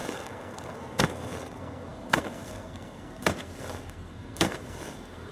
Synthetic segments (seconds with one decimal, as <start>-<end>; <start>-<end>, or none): 0.0-5.3